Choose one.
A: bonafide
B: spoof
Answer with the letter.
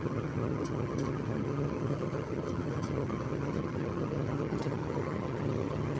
B